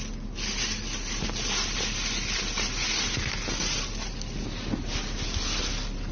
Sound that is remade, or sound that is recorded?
recorded